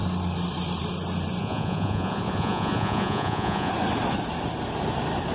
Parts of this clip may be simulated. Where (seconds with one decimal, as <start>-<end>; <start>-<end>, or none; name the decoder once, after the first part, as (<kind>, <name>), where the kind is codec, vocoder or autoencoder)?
1.4-3.7 (vocoder, Vocos)